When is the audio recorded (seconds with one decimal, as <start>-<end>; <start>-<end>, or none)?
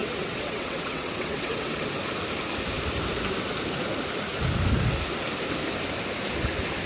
1.8-6.9